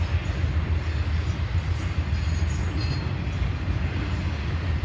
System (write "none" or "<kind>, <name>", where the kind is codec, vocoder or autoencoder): none